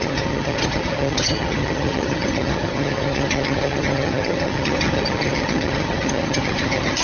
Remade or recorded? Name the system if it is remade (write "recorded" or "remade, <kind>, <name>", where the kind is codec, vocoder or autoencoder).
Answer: remade, vocoder, HiFi-GAN